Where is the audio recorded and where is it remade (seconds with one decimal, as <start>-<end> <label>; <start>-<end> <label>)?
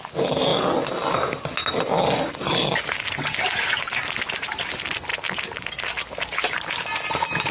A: 0.0-7.5 recorded